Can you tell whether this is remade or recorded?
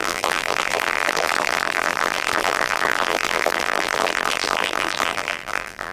remade